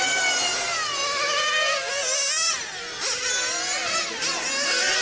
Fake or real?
real